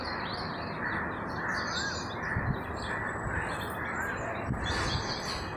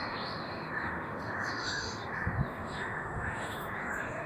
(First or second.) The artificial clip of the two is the second